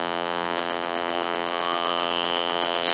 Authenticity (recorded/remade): remade